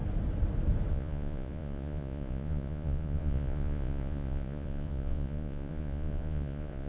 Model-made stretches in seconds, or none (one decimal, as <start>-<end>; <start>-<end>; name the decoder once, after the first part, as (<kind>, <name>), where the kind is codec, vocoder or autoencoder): 0.9-6.9 (vocoder, Vocos)